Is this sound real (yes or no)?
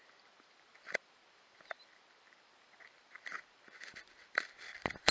no